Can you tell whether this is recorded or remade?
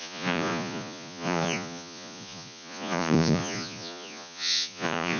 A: remade